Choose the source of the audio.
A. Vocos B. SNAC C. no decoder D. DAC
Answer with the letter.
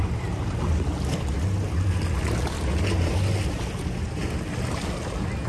C